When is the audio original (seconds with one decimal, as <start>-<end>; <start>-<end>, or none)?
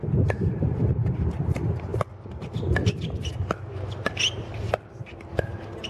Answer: 0.0-5.9